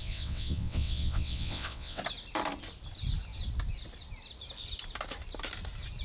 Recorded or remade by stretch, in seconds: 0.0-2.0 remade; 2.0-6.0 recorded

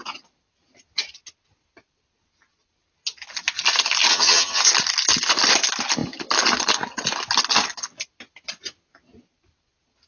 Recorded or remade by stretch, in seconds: 0.0-4.1 recorded; 4.1-4.6 remade; 4.6-10.1 recorded